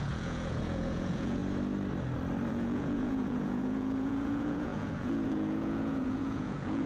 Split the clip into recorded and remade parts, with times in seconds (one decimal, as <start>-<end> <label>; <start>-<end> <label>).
0.0-1.4 remade; 1.4-2.5 recorded; 2.5-6.9 remade